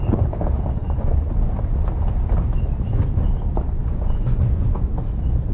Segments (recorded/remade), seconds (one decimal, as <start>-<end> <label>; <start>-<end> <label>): 0.0-0.8 recorded; 0.8-1.3 remade; 1.3-3.8 recorded; 3.8-4.9 remade; 4.9-5.5 recorded